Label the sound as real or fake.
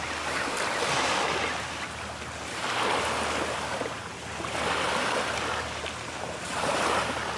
real